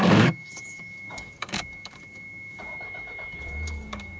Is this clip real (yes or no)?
no